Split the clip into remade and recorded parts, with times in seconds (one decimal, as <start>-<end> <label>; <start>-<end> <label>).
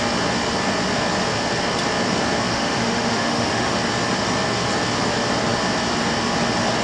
0.0-2.5 recorded; 2.5-3.7 remade; 3.7-6.8 recorded